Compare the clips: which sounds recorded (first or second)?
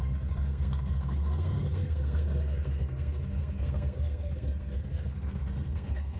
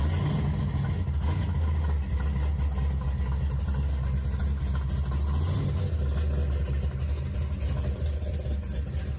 second